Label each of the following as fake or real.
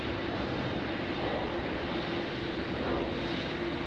real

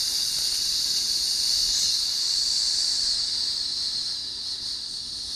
real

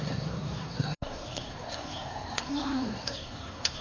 fake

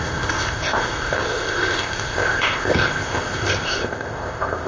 fake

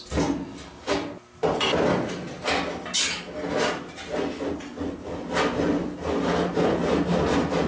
real